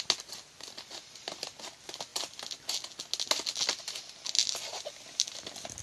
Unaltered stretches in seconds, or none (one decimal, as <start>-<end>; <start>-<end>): 0.0-5.8